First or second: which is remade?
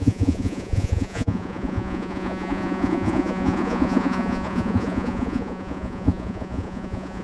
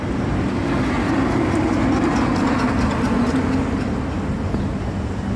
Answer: first